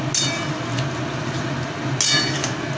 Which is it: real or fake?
real